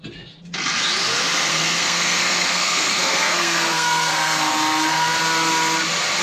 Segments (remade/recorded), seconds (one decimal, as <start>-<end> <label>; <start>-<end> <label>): 0.0-1.5 recorded; 1.5-5.2 remade; 5.2-6.2 recorded

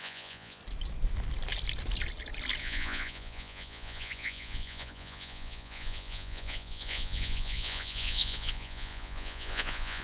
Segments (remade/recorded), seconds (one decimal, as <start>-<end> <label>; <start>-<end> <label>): 0.0-0.6 remade; 0.6-2.6 recorded; 2.6-10.0 remade

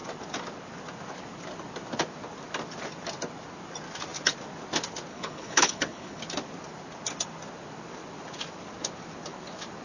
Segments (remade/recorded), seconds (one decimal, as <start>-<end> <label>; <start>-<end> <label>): 0.0-5.1 recorded; 5.1-6.2 remade; 6.2-9.8 recorded